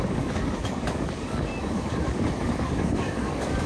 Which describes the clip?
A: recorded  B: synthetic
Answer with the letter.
B